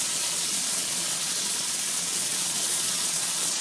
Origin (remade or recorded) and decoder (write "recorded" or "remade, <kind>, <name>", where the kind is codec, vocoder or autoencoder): remade, vocoder, Vocos